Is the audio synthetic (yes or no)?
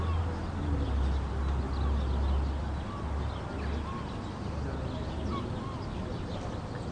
no